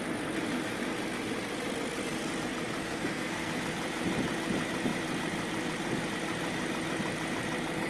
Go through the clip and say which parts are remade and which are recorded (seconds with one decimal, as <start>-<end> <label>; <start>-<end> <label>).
0.0-2.8 recorded; 2.8-3.5 remade; 3.5-7.9 recorded